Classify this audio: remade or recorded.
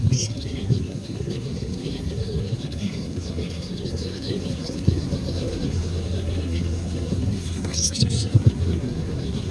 remade